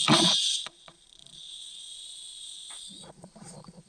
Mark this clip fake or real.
fake